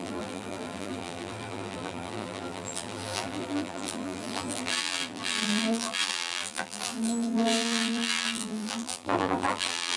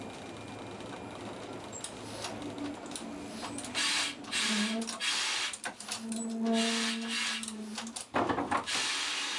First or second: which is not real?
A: first